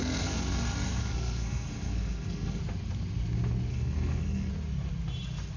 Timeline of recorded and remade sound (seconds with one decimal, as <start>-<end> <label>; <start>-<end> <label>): 0.0-0.5 remade; 0.5-1.0 recorded; 1.0-2.6 remade; 2.6-3.7 recorded; 3.7-4.5 remade; 4.5-5.6 recorded